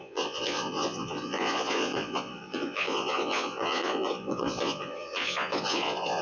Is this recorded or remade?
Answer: remade